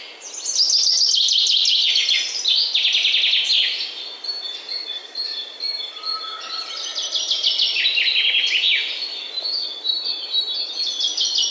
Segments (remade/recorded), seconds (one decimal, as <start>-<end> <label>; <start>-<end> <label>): 0.0-5.0 recorded; 5.0-5.8 remade; 5.8-11.5 recorded